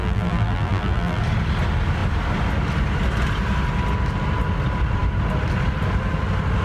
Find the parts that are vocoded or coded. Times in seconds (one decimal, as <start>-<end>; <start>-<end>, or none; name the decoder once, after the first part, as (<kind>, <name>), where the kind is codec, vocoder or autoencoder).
0.0-1.2 (vocoder, BigVGAN v2)